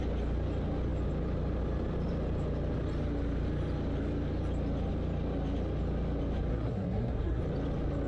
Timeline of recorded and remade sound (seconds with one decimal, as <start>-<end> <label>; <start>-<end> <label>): 0.0-6.5 recorded; 6.5-7.4 remade; 7.4-8.1 recorded